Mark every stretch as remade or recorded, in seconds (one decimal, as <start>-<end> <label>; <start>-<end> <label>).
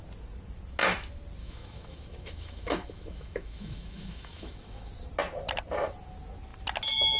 0.0-1.4 recorded; 1.4-4.9 remade; 4.9-7.2 recorded